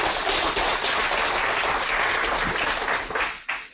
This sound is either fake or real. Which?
real